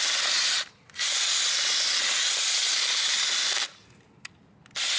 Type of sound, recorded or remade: recorded